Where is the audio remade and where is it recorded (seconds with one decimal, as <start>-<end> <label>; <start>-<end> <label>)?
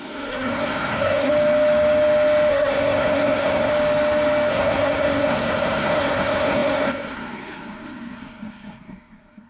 0.0-1.3 remade; 1.3-2.5 recorded; 2.5-3.7 remade; 3.7-4.5 recorded; 4.5-9.5 remade